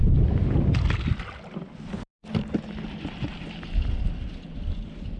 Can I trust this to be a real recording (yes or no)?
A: yes